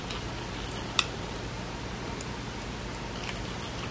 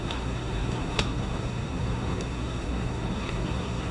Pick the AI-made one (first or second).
second